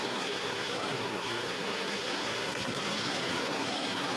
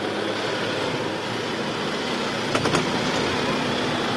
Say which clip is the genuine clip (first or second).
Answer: second